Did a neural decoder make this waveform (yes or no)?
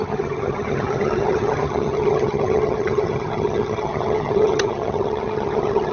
yes